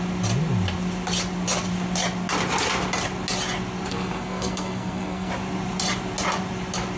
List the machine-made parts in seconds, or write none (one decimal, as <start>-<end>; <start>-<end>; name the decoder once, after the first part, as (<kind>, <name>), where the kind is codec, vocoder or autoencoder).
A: 3.9-5.3 (codec, SNAC)